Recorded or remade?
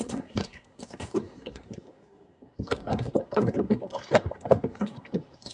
remade